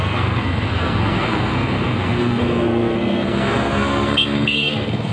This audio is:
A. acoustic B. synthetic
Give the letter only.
B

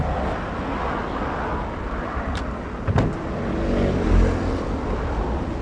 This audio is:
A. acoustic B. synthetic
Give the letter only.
A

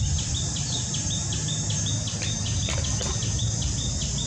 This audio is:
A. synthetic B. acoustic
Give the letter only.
B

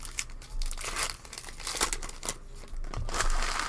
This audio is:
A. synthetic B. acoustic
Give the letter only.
B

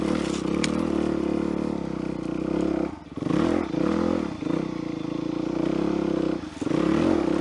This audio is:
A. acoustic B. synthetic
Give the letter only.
A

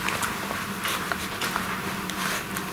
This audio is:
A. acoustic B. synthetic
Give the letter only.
A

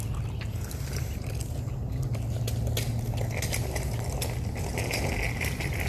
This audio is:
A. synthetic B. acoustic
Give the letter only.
B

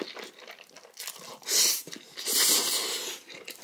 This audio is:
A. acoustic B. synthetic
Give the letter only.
A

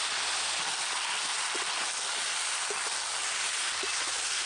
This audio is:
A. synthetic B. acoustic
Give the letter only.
B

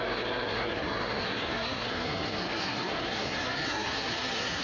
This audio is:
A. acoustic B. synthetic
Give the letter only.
B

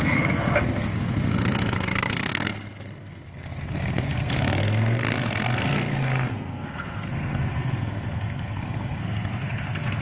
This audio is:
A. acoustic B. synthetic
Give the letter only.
B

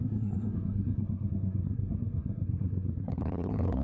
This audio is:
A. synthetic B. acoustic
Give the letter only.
A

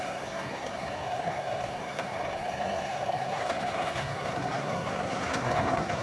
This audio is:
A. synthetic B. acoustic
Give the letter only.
A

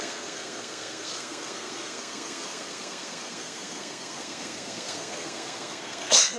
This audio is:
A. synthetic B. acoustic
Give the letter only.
A